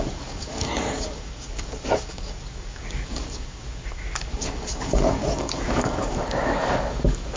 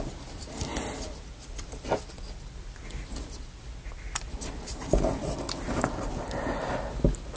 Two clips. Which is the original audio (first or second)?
second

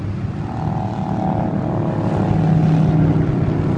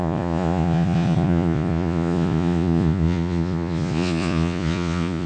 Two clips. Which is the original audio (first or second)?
first